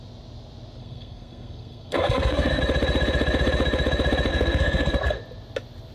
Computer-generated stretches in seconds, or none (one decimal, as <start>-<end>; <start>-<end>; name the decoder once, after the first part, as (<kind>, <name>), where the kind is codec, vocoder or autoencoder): 0.8-2.6 (codec, SNAC); 4.3-5.2